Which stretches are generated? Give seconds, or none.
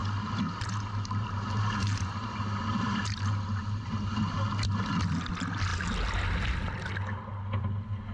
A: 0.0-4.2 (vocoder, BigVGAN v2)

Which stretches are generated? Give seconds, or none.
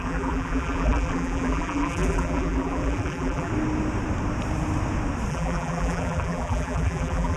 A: 0.0-3.5 (vocoder, BigVGAN v2); 5.3-7.4